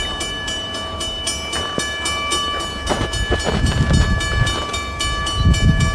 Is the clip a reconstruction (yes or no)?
no